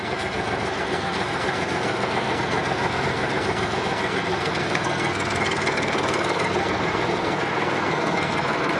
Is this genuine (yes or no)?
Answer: no